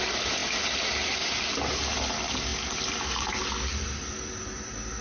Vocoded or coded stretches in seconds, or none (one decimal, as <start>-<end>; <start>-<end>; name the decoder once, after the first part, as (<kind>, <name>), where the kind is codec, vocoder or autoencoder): none